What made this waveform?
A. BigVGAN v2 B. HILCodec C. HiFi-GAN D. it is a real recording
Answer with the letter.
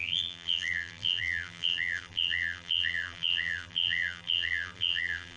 A